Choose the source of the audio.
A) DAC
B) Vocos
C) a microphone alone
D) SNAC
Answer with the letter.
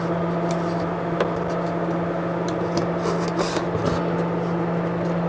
C